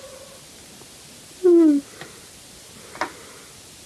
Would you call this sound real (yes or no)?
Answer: yes